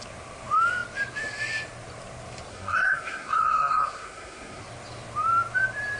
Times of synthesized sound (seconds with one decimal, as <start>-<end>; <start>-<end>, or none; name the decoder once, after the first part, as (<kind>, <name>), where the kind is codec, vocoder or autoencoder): 2.5-4.6 (codec, SNAC)